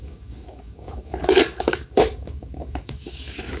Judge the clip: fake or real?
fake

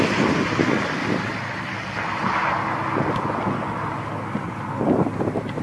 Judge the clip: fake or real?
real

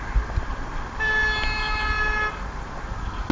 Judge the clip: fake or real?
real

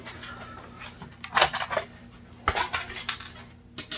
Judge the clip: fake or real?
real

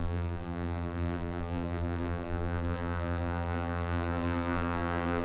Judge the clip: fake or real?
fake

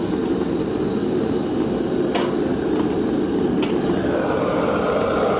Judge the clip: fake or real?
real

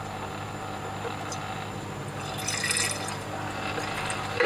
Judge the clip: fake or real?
real